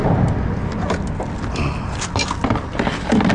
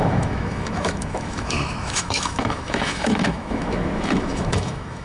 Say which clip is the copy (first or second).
second